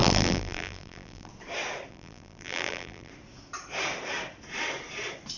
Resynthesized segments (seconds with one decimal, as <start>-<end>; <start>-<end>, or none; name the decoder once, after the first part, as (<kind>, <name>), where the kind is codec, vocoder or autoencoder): 0.0-1.3 (vocoder, BigVGAN v2); 1.9-3.1